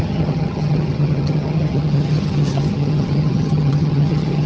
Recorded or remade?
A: remade